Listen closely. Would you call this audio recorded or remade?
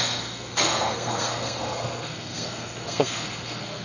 remade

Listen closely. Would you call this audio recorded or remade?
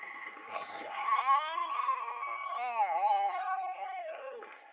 remade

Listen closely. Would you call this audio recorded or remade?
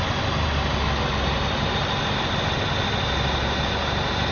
recorded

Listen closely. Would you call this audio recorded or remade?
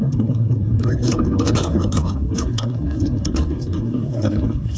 remade